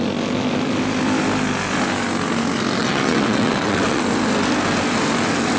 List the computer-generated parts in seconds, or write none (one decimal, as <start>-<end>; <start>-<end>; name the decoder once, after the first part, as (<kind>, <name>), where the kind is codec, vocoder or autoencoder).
2.8-4.0 (vocoder, WaveNeXt)